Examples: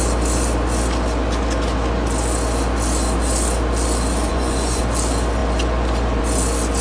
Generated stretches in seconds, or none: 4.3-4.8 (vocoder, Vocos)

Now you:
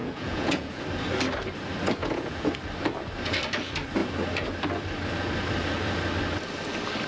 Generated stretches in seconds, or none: 0.0-0.8 (vocoder, Vocos); 2.0-2.5

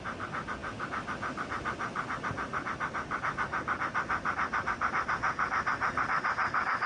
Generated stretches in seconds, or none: none

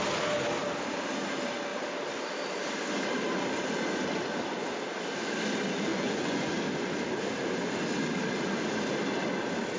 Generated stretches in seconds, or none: 5.9-6.5 (vocoder, Vocos)